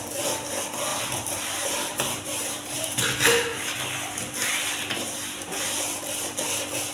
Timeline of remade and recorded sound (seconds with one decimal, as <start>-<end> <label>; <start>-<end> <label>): 0.0-0.9 recorded; 0.9-2.9 remade; 2.9-6.9 recorded